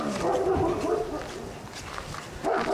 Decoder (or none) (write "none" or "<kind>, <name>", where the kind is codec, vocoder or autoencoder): none